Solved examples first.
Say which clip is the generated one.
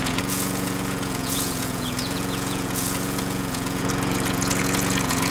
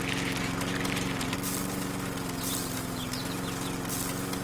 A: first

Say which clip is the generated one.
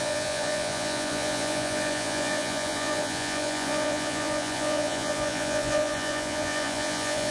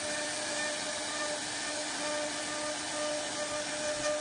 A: first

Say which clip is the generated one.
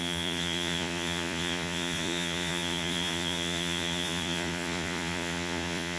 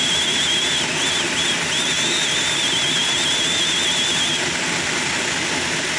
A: first